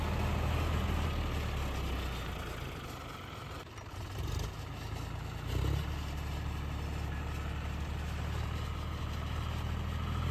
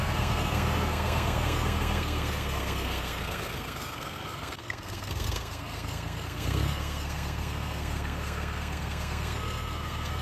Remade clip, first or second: second